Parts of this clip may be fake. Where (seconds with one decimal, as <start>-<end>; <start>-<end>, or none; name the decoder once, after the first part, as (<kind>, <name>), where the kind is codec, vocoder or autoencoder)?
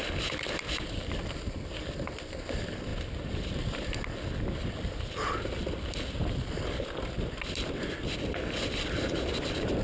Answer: none